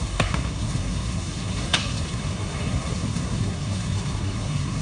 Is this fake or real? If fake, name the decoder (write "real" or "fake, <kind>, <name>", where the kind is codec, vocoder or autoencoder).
fake, codec, SNAC